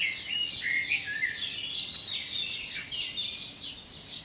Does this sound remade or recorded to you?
recorded